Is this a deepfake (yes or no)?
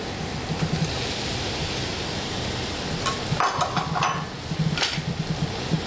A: no